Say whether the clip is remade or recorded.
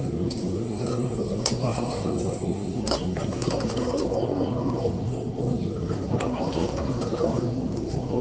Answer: remade